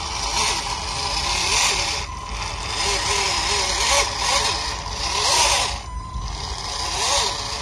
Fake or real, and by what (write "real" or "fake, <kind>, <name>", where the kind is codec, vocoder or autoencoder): real